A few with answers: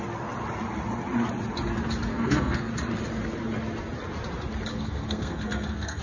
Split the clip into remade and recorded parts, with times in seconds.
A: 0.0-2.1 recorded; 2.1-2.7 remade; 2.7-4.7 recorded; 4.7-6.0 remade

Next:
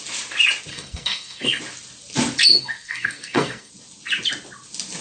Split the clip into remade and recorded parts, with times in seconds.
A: 0.0-0.7 recorded; 0.7-1.6 remade; 1.6-2.6 recorded; 2.6-3.7 remade; 3.7-5.0 recorded

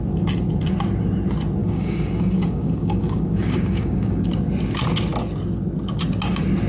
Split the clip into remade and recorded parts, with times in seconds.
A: 0.0-1.6 recorded; 1.6-4.3 remade; 4.3-6.7 recorded

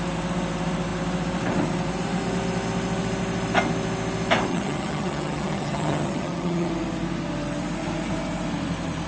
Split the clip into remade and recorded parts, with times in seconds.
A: 0.0-4.5 recorded; 4.5-6.7 remade; 6.7-9.1 recorded